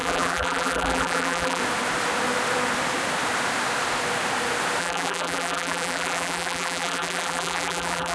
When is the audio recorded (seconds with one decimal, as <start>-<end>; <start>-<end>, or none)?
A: 1.6-4.8